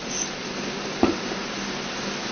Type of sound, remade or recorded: recorded